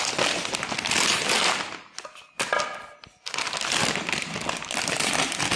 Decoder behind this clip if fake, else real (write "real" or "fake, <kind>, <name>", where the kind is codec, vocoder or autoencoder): real